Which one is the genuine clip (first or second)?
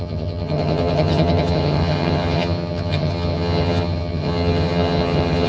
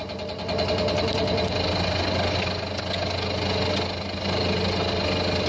second